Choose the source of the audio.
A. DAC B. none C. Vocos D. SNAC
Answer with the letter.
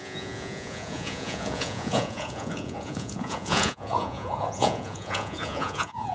C